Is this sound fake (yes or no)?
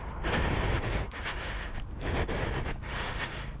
no